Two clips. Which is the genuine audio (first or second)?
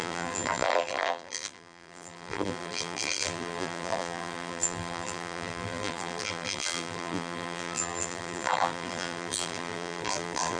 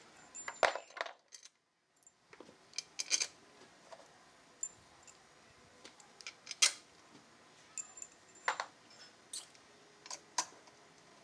second